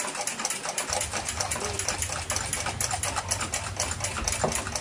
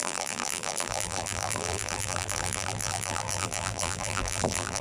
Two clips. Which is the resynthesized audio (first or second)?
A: second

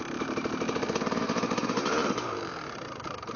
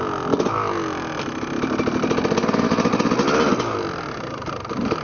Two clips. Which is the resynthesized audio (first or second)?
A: first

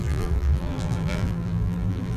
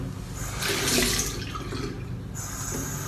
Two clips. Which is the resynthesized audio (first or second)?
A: first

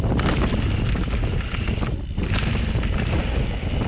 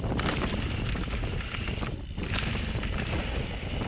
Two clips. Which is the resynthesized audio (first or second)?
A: second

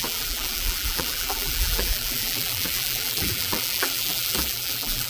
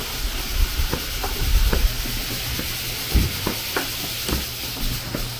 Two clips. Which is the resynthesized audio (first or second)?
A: first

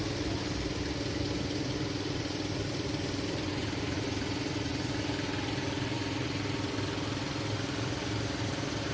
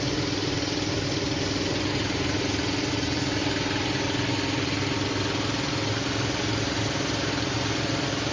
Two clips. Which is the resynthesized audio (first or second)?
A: first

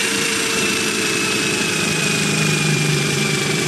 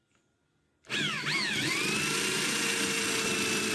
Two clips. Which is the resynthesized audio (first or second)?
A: first